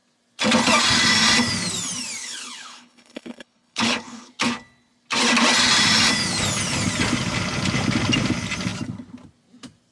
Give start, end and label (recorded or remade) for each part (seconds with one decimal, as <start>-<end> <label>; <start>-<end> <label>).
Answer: 0.0-2.2 recorded; 2.2-4.3 remade; 4.3-9.9 recorded